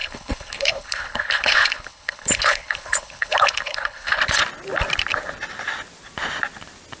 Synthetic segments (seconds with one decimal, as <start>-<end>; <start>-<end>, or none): 0.0-4.2